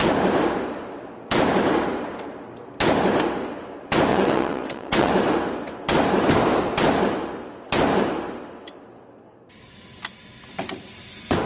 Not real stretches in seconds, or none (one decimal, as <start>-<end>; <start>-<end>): 4.1-5.1